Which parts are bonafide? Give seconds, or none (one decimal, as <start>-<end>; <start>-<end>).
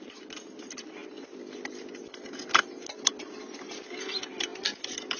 0.0-5.2